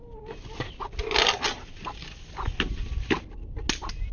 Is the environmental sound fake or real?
real